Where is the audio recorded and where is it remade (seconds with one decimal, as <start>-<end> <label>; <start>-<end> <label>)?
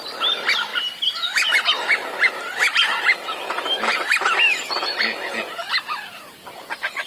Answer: 0.0-0.7 remade; 0.7-2.3 recorded; 2.3-7.1 remade